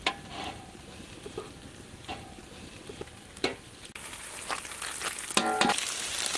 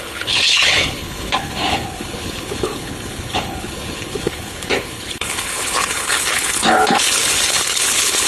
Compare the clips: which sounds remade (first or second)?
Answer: second